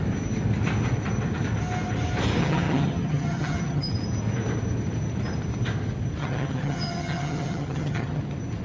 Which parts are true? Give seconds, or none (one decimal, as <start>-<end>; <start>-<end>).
0.0-2.4; 3.9-6.2; 8.2-8.6